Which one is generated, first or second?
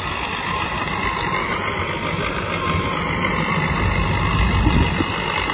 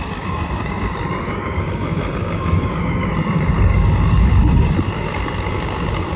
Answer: second